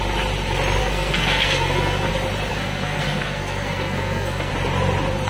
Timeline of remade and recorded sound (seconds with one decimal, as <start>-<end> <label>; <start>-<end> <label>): 0.0-0.8 recorded; 0.8-2.1 remade; 2.1-2.5 recorded; 2.5-4.5 remade; 4.5-5.3 recorded